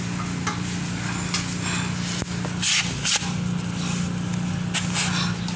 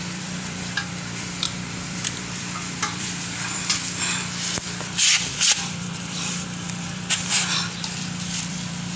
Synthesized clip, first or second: second